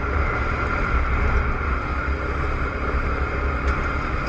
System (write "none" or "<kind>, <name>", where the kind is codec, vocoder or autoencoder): none